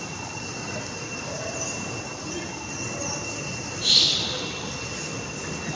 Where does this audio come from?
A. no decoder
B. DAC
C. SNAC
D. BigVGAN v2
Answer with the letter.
A